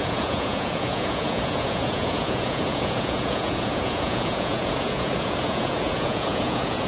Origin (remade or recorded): remade